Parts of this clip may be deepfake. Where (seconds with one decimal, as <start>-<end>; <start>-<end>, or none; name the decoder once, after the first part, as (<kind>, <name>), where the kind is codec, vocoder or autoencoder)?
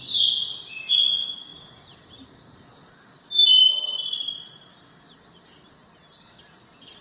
1.5-2.9 (vocoder, BigVGAN v2)